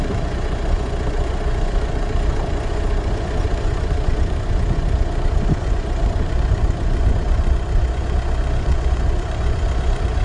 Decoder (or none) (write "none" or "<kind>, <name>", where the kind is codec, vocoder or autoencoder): vocoder, Vocos